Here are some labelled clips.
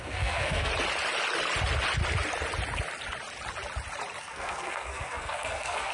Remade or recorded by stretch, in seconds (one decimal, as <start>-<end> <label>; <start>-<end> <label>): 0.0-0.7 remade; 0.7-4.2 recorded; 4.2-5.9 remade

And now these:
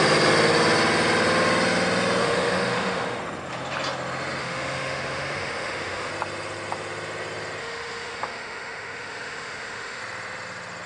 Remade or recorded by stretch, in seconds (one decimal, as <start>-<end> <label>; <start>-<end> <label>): 0.0-2.2 recorded; 2.2-3.2 remade; 3.2-4.4 recorded; 4.4-6.1 remade; 6.1-7.6 recorded; 7.6-10.0 remade; 10.0-10.9 recorded

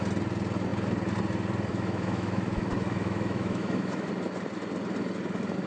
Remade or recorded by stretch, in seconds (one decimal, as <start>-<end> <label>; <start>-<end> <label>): 0.0-1.7 recorded; 1.7-4.1 remade; 4.1-5.7 recorded

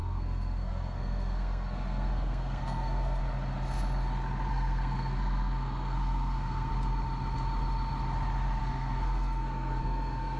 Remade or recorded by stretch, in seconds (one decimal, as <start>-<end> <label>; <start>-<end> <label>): 0.0-3.2 remade; 3.2-4.5 recorded; 4.5-6.7 remade; 6.7-8.6 recorded; 8.6-10.4 remade

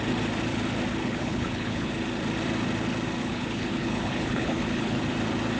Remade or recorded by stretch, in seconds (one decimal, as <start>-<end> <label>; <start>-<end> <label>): 0.0-1.0 recorded; 1.0-1.9 remade; 1.9-3.2 recorded; 3.2-5.0 remade; 5.0-5.6 recorded

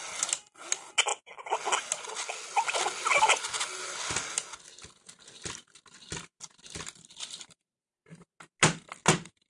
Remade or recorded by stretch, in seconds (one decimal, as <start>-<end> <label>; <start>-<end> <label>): 0.0-9.5 recorded

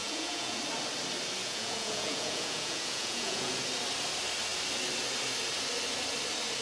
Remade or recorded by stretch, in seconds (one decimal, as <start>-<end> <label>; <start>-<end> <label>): 0.0-0.6 remade; 0.6-1.4 recorded; 1.4-3.5 remade; 3.5-6.6 recorded

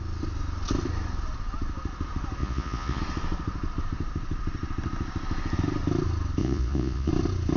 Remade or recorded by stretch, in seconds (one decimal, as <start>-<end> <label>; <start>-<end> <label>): 0.0-2.4 recorded; 2.4-3.0 remade; 3.0-6.4 recorded; 6.4-7.1 remade; 7.1-7.6 recorded